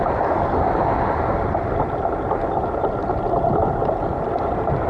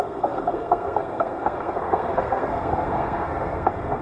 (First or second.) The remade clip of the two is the second